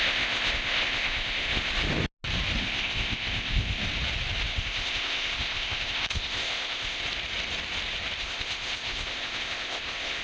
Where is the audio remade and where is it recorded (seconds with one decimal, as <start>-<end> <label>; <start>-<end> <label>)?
0.0-1.7 remade; 1.7-2.6 recorded; 2.6-3.8 remade; 3.8-4.5 recorded; 4.5-7.0 remade; 7.0-8.2 recorded; 8.2-10.2 remade